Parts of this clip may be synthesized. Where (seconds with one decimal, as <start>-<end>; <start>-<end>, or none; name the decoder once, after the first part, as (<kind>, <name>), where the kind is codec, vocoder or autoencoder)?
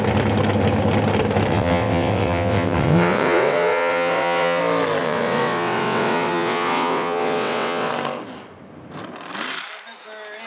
1.5-4.6 (vocoder, WaveNeXt); 5.0-7.9